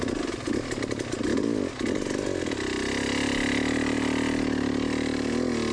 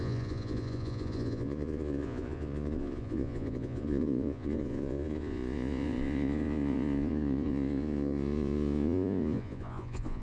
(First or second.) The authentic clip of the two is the first